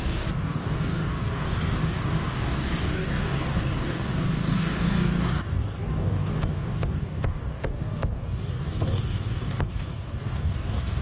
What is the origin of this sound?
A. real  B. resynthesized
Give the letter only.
B